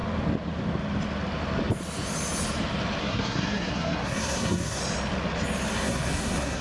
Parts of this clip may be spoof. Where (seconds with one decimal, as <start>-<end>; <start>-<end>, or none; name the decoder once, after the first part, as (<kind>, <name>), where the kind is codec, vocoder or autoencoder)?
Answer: 3.0-4.8 (codec, SNAC); 5.7-6.6